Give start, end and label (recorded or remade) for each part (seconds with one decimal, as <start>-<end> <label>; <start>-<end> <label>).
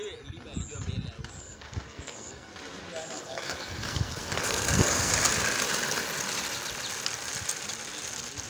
0.0-1.4 recorded; 1.4-2.5 remade; 2.5-3.2 recorded; 3.2-5.1 remade; 5.1-8.5 recorded